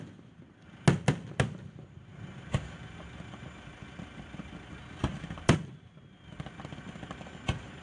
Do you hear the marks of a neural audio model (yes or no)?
no